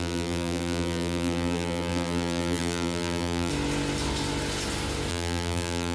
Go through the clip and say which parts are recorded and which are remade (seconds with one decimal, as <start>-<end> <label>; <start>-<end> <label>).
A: 0.0-3.5 remade; 3.5-5.1 recorded; 5.1-5.9 remade